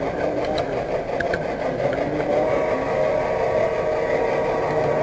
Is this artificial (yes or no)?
no